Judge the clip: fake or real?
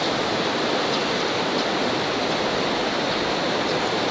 real